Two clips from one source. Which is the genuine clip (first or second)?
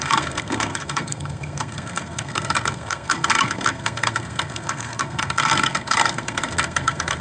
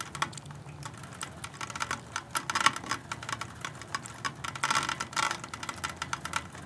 second